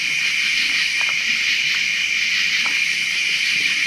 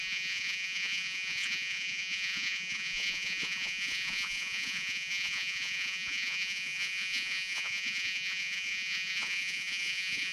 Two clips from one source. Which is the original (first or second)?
first